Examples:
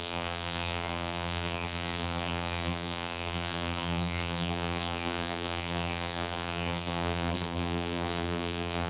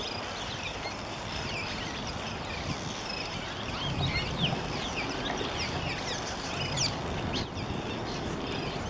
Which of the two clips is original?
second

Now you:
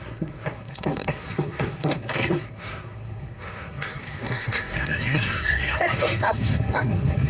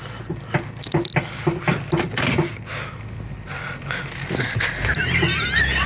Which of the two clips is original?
second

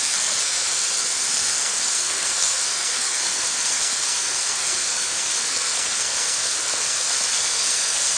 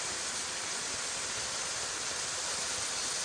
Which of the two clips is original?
second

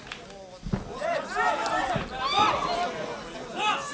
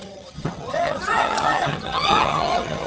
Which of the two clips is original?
first